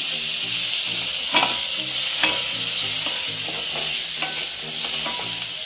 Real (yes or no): yes